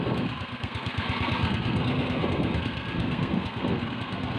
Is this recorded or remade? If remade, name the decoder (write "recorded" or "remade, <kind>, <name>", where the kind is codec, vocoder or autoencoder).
remade, codec, SNAC